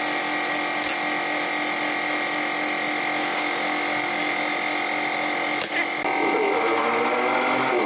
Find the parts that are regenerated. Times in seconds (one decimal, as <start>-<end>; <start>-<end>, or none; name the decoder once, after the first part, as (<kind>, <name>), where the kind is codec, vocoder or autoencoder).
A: 3.2-4.4 (codec, DAC)